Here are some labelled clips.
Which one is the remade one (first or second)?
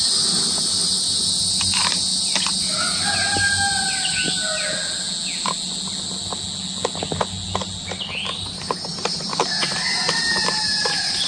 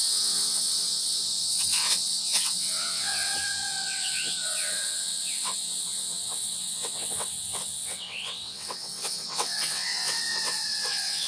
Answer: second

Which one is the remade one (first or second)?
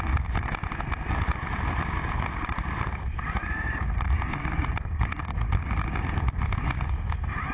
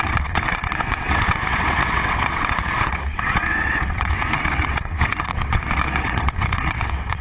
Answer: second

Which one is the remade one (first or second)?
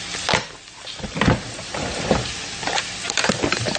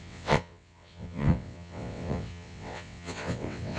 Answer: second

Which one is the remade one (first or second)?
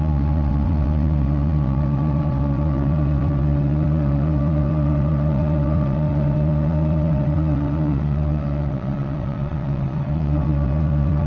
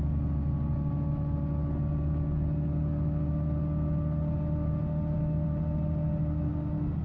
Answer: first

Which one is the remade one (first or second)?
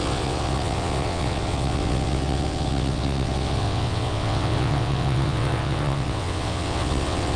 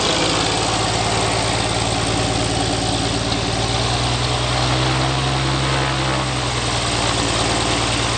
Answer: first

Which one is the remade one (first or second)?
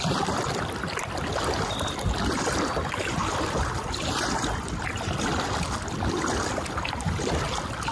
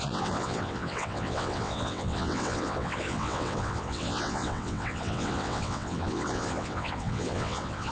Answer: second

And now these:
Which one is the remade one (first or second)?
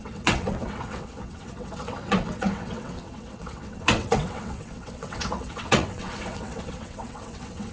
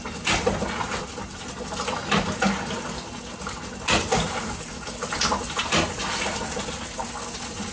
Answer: first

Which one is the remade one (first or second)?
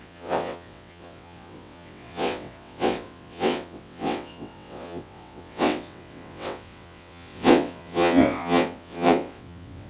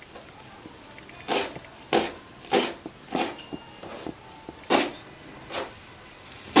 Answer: first